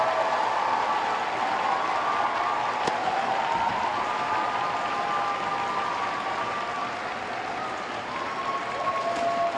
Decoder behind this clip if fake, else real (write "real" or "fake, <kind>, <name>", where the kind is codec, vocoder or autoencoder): real